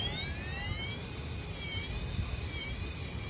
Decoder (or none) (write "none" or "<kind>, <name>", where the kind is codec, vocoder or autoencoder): none